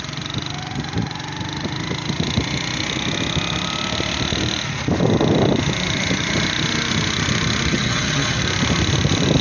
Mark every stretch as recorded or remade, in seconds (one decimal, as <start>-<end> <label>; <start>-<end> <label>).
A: 0.0-7.7 recorded; 7.7-8.4 remade; 8.4-9.4 recorded